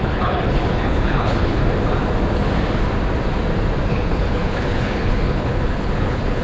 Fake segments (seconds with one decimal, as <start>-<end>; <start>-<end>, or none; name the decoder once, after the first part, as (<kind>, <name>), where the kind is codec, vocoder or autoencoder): 0.0-1.6 (codec, HILCodec); 3.9-6.4